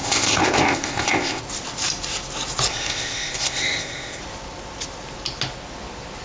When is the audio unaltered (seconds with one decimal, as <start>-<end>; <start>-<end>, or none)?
1.4-2.7; 4.2-6.2